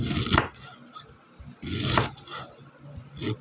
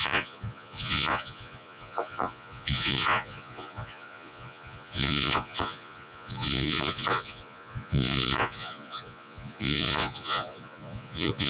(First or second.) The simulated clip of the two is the second